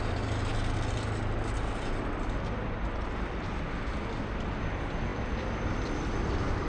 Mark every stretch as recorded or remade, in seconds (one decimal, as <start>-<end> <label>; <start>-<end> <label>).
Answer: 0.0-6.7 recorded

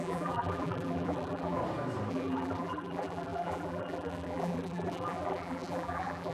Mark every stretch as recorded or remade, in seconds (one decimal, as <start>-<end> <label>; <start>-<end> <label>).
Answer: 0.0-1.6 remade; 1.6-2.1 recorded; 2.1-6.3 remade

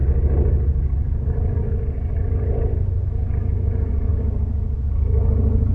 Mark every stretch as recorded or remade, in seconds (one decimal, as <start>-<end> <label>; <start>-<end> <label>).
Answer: 0.0-5.7 recorded

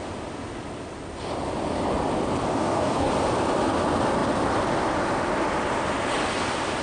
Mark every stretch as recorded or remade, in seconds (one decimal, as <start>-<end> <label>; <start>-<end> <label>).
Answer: 0.0-2.5 recorded; 2.5-3.1 remade; 3.1-6.8 recorded

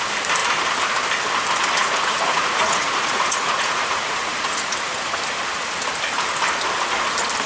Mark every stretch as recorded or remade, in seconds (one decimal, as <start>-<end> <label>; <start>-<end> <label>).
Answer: 0.0-1.8 recorded; 1.8-5.2 remade; 5.2-7.5 recorded